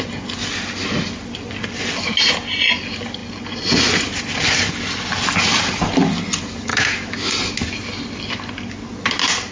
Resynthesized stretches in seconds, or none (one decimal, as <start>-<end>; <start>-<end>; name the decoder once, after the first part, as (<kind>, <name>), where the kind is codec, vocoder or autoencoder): 6.7-7.3 (autoencoder, DAC-VAE)